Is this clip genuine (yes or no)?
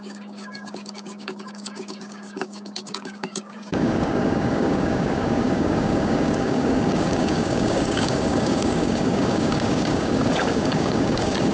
no